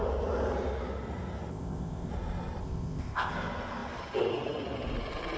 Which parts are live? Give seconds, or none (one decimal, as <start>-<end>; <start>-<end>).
0.0-1.5; 2.1-2.6; 3.3-5.4